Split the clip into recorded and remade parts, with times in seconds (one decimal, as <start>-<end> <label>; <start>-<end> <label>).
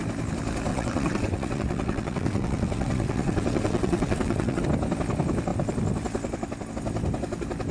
0.0-0.7 recorded; 0.7-4.6 remade; 4.6-7.7 recorded